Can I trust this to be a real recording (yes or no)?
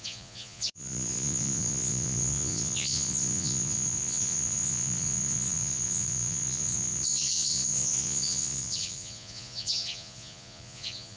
no